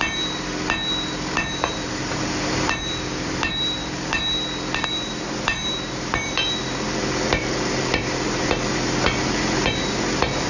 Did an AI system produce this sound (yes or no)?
yes